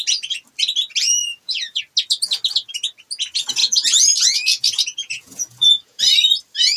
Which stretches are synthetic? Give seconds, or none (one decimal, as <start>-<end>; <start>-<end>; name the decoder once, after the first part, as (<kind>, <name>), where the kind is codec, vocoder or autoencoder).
1.2-1.8 (vocoder, Vocos); 3.6-6.0